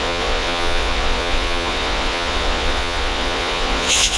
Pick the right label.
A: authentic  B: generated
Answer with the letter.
B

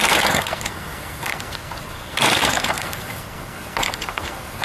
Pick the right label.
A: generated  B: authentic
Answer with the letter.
A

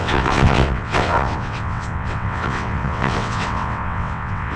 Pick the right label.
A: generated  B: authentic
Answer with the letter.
A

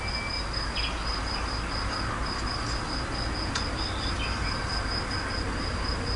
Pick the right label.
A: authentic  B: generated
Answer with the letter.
A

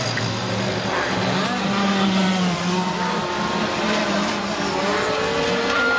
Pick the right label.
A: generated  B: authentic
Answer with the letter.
B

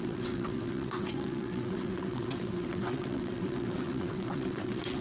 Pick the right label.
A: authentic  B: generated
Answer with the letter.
B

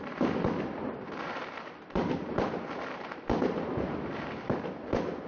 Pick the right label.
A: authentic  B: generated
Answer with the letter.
B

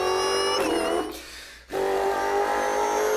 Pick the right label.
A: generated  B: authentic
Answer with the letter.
B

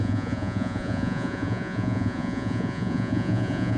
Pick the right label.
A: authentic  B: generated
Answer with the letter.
B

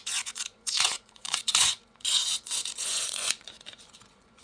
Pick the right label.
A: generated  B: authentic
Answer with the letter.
A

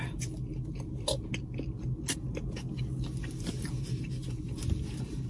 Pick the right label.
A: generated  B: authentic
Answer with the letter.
B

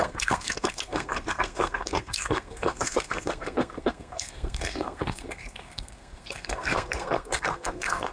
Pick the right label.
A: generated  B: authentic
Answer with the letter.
A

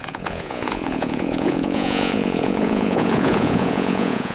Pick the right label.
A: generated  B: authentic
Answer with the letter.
A